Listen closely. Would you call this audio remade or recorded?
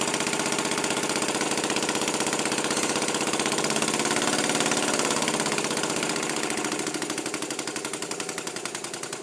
recorded